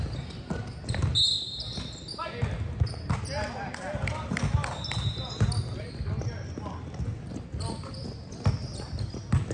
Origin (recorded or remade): recorded